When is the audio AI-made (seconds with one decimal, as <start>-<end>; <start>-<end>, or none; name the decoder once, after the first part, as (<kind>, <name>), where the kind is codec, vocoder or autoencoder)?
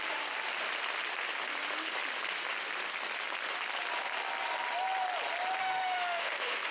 5.6-6.7 (autoencoder, DAC-VAE)